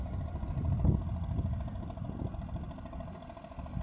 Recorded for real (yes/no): yes